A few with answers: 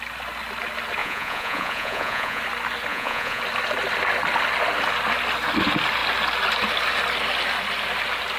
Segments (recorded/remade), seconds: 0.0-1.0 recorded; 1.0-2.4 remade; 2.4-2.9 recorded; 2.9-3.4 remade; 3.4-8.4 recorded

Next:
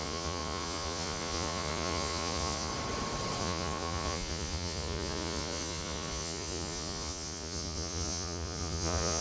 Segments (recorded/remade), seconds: 0.0-2.7 remade; 2.7-3.4 recorded; 3.4-9.2 remade